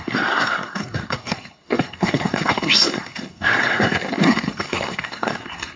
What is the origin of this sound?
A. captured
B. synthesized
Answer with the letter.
B